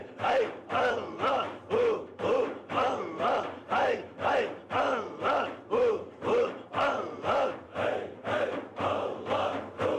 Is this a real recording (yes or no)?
no